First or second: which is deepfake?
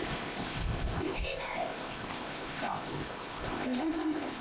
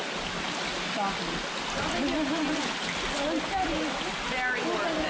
first